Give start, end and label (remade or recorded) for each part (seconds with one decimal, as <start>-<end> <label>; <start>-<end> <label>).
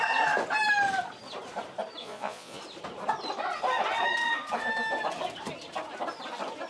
0.0-2.0 recorded; 2.0-2.6 remade; 2.6-6.7 recorded